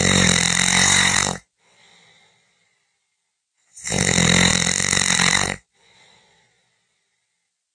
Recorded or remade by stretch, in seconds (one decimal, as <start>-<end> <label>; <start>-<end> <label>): 0.0-4.5 recorded; 4.5-6.4 remade; 6.4-7.7 recorded